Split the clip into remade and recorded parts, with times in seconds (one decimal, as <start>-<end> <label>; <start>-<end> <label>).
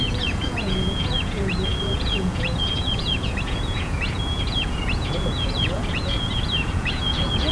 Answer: 0.0-7.5 remade